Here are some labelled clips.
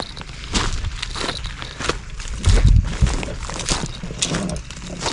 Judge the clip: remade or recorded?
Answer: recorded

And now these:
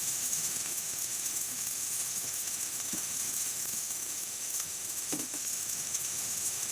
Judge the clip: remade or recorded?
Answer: remade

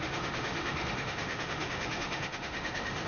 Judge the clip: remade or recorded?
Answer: remade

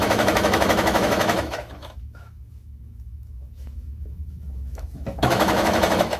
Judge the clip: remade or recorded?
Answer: remade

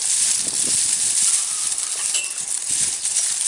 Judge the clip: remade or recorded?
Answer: recorded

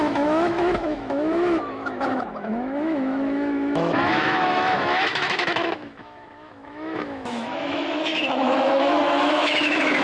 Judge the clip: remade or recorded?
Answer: remade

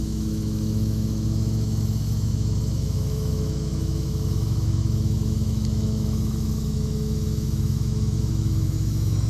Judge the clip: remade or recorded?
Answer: remade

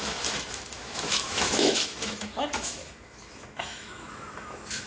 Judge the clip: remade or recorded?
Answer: remade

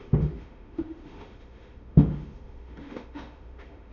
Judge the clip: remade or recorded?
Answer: remade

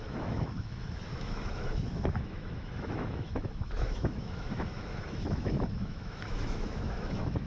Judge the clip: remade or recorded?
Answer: remade